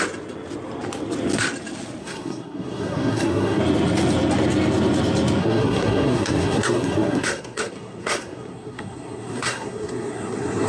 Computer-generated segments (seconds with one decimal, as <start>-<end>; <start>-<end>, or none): 2.0-3.6; 5.4-10.7